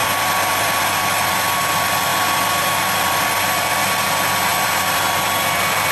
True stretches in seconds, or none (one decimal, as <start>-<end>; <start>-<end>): 0.0-5.9